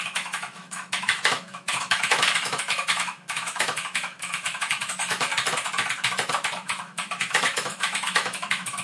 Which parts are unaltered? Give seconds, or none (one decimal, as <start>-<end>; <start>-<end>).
5.3-6.3